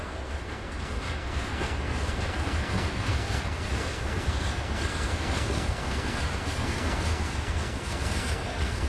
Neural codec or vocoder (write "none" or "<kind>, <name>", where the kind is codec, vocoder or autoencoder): codec, SNAC